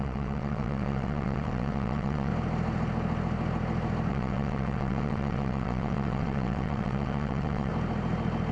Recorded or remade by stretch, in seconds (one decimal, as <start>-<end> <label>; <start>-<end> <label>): 0.0-2.3 remade; 2.3-4.1 recorded; 4.1-7.7 remade; 7.7-8.5 recorded